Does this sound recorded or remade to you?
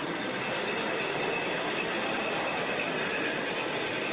recorded